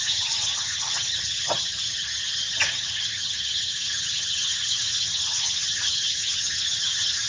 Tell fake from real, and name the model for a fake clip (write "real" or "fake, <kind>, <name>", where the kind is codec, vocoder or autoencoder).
fake, vocoder, HiFi-GAN